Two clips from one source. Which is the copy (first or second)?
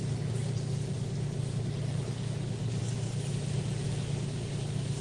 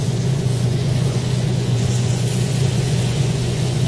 second